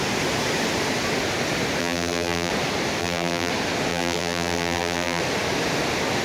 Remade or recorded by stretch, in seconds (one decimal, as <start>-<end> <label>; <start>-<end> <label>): 0.0-1.8 recorded; 1.8-2.5 remade; 2.5-3.0 recorded; 3.0-3.5 remade; 3.5-3.9 recorded; 3.9-5.2 remade; 5.2-6.2 recorded